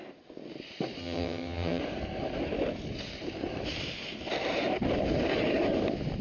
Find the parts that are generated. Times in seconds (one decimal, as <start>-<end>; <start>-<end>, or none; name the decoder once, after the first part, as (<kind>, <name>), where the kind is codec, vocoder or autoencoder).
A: 1.0-1.8 (vocoder, HiFi-GAN)